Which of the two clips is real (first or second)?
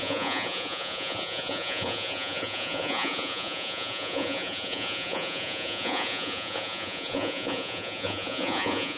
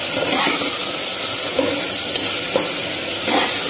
second